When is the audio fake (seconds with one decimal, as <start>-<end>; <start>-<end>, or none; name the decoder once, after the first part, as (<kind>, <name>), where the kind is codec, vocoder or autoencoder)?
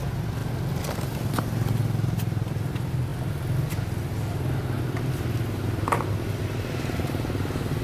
none